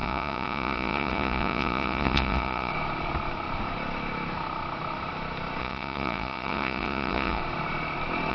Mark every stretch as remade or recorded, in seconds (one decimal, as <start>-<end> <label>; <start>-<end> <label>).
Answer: 0.0-2.7 remade; 2.7-5.6 recorded; 5.6-7.4 remade; 7.4-8.3 recorded